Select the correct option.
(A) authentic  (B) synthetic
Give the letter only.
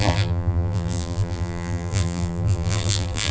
B